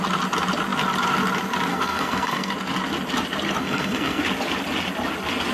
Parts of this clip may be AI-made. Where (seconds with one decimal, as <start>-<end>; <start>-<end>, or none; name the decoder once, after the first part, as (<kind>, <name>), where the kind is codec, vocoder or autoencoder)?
1.7-2.5 (codec, SNAC); 3.6-4.2

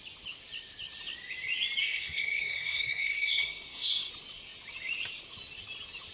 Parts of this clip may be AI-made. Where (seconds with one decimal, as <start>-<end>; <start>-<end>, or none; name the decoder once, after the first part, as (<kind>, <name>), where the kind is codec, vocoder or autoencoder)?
1.8-4.1 (codec, SNAC)

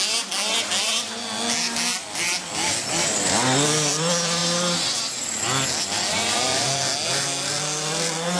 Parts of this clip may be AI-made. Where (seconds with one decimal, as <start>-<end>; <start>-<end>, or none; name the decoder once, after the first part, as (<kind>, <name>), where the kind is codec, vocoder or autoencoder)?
none

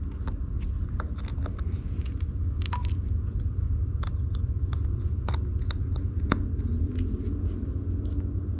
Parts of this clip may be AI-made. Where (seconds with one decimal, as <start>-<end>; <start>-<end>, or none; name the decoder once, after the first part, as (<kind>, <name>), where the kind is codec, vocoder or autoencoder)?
none